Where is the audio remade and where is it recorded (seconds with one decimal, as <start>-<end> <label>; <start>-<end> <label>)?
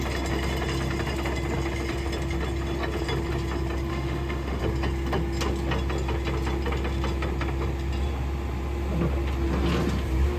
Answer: 0.0-3.9 recorded; 3.9-4.6 remade; 4.6-10.4 recorded